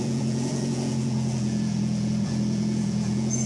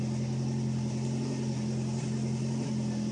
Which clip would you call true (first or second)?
second